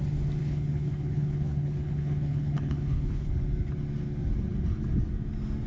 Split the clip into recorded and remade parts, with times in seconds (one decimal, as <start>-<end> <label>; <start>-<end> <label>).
0.0-0.4 recorded; 0.4-3.3 remade; 3.3-5.7 recorded